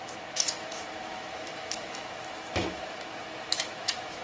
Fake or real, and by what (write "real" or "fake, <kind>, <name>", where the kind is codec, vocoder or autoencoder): fake, autoencoder, DAC-VAE